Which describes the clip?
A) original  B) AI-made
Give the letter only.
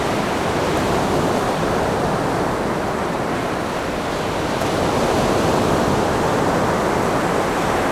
A